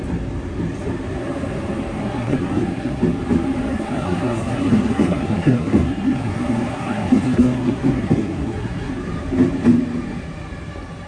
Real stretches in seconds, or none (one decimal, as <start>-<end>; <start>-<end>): 0.0-2.0; 3.0-3.7; 8.9-11.1